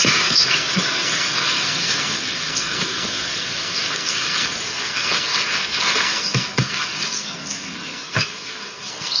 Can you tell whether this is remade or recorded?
remade